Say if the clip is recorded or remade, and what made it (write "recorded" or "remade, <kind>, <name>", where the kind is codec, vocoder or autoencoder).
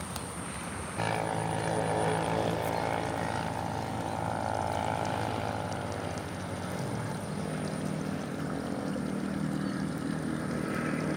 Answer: recorded